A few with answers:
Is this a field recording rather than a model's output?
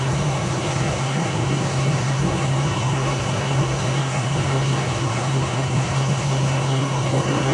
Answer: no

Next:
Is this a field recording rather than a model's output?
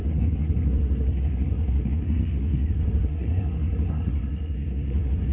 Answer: no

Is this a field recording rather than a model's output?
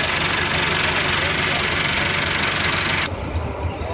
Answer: yes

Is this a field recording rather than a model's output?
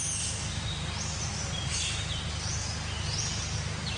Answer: yes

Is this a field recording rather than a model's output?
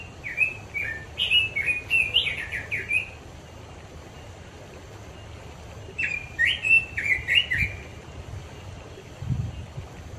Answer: yes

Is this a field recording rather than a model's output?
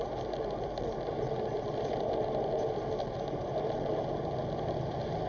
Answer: yes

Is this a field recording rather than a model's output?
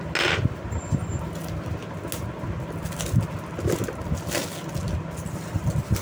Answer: yes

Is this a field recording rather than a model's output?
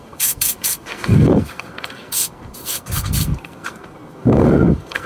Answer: no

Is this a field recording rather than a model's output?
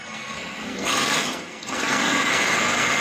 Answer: no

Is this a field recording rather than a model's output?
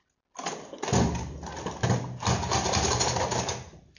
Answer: yes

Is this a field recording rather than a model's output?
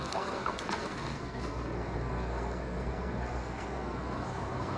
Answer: no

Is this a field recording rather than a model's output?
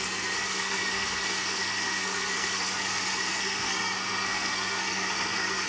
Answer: no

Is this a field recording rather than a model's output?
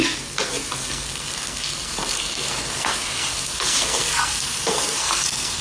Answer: no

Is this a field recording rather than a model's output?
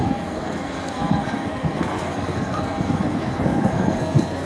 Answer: no